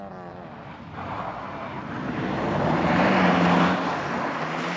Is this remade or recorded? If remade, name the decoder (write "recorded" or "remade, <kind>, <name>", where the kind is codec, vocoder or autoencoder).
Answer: recorded